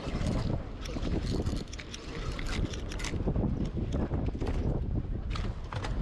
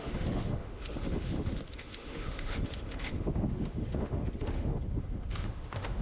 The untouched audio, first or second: first